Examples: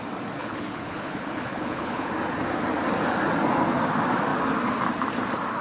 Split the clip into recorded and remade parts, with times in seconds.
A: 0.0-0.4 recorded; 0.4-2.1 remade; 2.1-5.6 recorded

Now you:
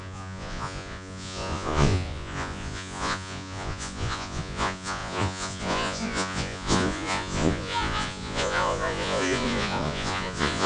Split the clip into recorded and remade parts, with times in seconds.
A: 0.0-10.7 remade

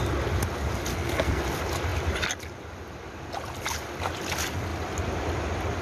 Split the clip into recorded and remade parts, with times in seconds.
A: 0.0-0.9 recorded; 0.9-1.4 remade; 1.4-5.8 recorded